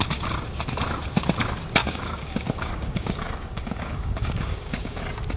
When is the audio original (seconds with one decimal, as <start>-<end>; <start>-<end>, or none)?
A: 0.0-1.8; 5.0-5.4